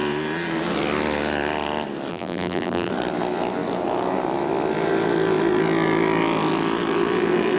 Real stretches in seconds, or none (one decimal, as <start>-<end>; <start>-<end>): 0.0-2.1; 2.9-7.6